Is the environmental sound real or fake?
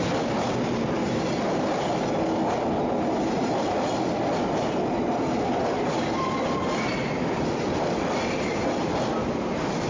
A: real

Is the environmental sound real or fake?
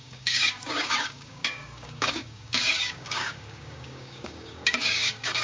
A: fake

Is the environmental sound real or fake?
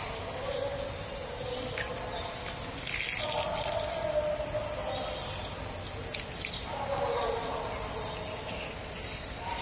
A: real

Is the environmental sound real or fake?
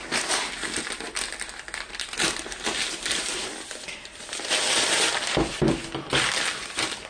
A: real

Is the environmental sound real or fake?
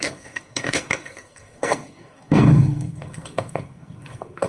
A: fake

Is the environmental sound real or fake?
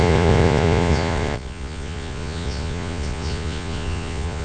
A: fake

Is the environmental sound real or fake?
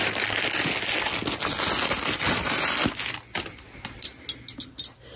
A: real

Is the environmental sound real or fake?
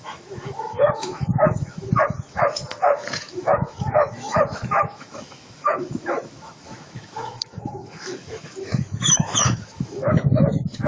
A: fake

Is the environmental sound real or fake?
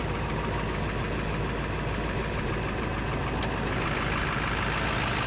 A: real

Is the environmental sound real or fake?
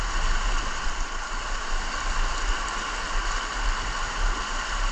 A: real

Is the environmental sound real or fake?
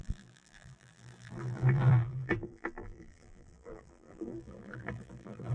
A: fake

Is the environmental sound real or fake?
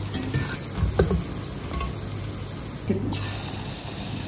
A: real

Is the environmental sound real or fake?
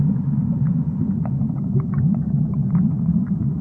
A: fake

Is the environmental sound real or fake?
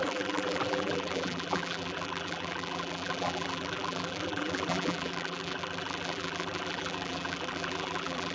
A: fake